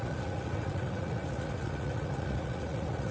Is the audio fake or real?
fake